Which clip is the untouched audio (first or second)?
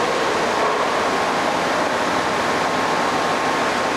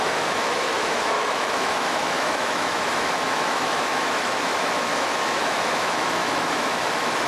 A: first